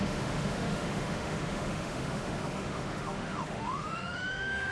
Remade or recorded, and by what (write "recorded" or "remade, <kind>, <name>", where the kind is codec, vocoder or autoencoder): remade, autoencoder, DAC-VAE